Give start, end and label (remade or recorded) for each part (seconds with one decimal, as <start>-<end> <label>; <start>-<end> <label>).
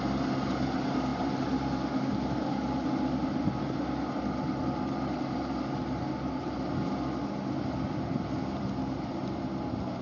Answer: 0.0-10.0 recorded